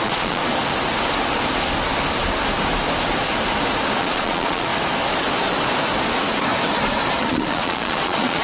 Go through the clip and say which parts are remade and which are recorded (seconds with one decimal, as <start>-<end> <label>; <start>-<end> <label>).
0.0-0.4 remade; 0.4-4.0 recorded; 4.0-4.7 remade; 4.7-7.2 recorded; 7.2-8.4 remade